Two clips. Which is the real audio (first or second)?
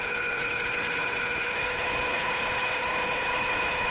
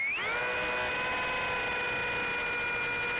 second